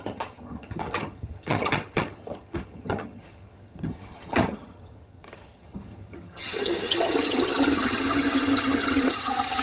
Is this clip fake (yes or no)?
yes